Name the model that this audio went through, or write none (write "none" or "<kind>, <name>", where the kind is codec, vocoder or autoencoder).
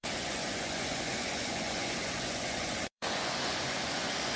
vocoder, Vocos